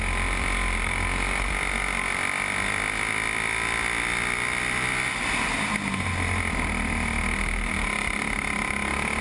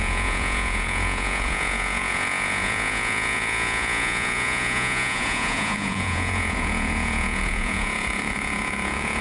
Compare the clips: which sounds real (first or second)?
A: first